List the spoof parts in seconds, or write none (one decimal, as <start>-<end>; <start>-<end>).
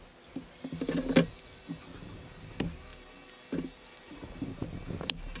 none